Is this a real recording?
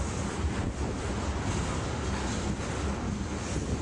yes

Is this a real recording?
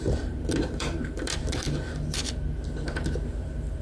no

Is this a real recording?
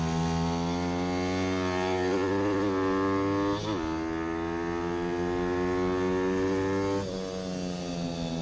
yes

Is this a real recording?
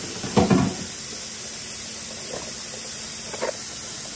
yes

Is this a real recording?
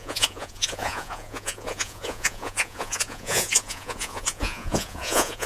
no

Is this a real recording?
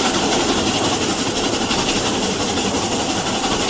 yes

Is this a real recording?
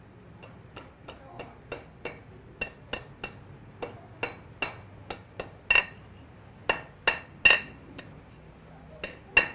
yes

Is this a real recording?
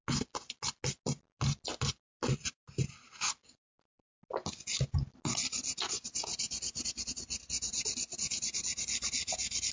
yes